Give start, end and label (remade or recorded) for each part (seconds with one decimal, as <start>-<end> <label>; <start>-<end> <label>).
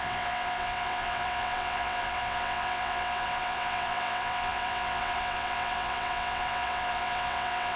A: 0.0-7.8 remade